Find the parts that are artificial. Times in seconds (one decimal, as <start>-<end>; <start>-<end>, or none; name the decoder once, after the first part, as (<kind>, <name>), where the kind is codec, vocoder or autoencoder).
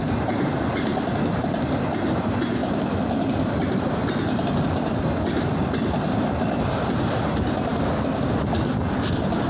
2.6-6.6 (vocoder, BigVGAN v2)